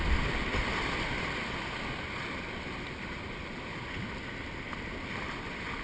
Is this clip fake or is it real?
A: real